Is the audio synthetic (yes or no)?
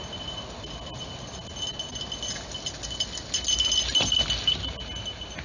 no